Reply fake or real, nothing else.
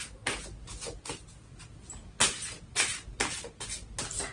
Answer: real